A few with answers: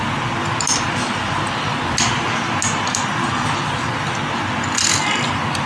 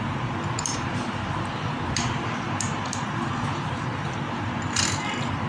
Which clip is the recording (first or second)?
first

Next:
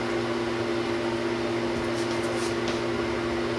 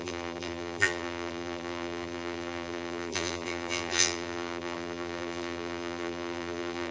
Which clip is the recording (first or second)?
first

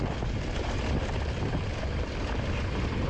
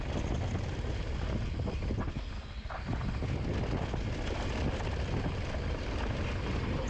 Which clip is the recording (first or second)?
second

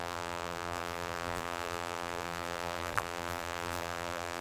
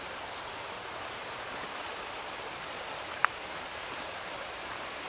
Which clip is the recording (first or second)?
second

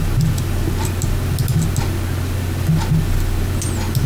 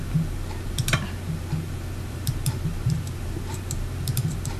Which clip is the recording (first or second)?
first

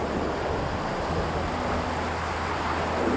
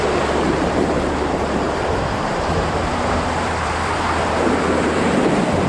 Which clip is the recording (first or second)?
first